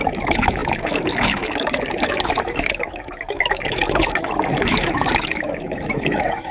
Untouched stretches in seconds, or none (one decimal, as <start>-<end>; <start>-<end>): none